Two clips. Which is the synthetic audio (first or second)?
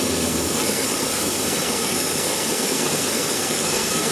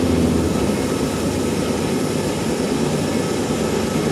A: first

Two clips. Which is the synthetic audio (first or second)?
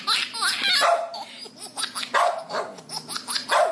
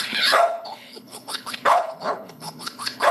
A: second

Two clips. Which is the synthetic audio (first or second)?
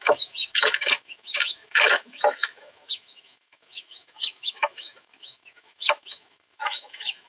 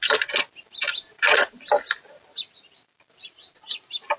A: first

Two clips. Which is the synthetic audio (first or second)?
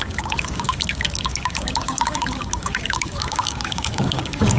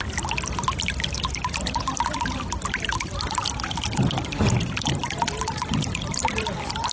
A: first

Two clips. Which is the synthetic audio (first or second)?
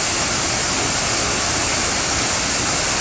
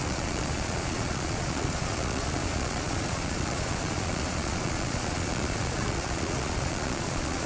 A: second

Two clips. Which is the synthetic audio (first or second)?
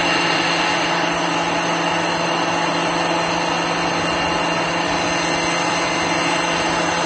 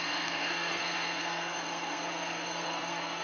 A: second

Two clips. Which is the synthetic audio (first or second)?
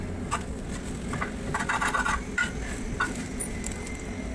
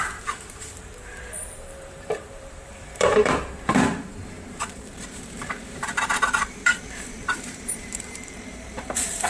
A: second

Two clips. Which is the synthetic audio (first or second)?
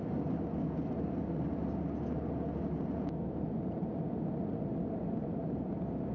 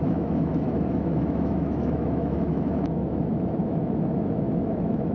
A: second